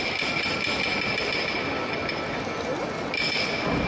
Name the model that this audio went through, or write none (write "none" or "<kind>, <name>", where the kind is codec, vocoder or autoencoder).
none